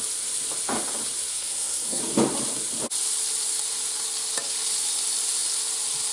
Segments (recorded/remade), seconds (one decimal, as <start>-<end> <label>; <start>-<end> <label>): 0.0-1.3 recorded; 1.3-2.0 remade; 2.0-6.1 recorded